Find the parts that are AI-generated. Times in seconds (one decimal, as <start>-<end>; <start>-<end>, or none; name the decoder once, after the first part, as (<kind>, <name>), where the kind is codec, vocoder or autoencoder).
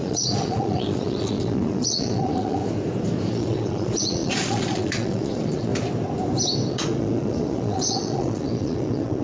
0.0-2.6 (vocoder, Vocos); 3.3-5.7; 6.7-9.2